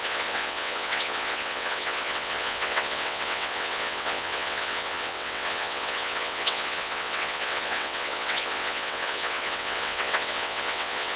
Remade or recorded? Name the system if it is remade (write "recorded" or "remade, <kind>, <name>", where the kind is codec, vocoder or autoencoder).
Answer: remade, vocoder, WaveNeXt